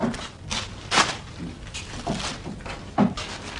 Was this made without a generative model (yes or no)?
yes